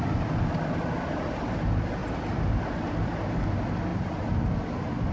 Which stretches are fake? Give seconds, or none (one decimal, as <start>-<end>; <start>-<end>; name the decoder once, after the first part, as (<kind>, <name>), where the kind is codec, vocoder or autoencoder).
2.0-2.6 (vocoder, BigVGAN v2); 3.9-4.6